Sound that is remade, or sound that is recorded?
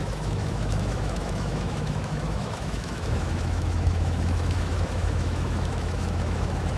remade